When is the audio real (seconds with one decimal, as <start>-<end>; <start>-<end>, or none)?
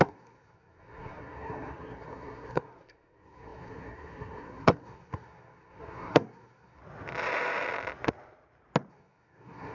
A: 6.8-8.9